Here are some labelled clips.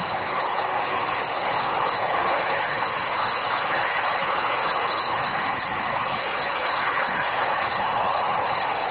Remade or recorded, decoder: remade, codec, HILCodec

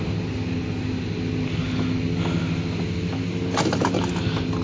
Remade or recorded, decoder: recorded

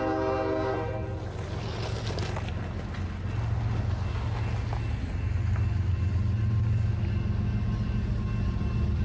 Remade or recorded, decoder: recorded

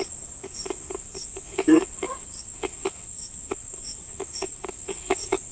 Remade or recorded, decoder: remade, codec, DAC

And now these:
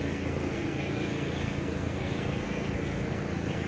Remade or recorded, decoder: remade, codec, SNAC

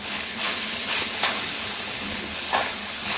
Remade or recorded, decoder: remade, codec, HILCodec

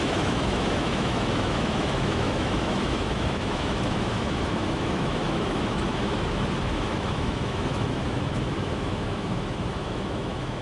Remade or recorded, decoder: remade, autoencoder, DAC-VAE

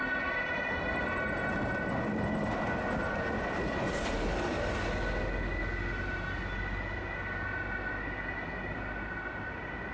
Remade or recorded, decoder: recorded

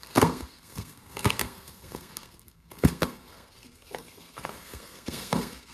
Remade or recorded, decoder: remade, codec, SNAC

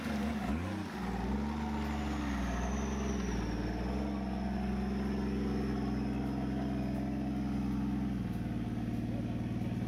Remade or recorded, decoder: recorded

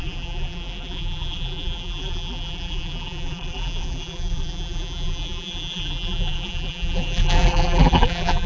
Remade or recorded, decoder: remade, vocoder, BigVGAN v2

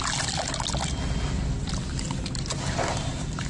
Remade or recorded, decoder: recorded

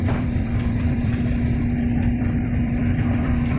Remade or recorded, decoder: remade, vocoder, BigVGAN v2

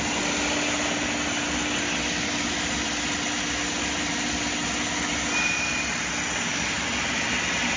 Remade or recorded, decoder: recorded